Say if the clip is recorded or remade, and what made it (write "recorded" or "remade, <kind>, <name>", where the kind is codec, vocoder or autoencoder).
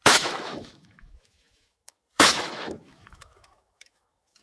remade, autoencoder, DAC-VAE